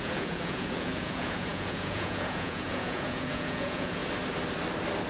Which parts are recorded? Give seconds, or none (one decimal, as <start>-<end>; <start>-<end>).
4.0-5.1